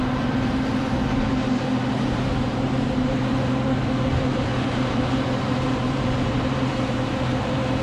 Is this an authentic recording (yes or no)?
no